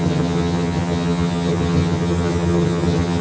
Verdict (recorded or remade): remade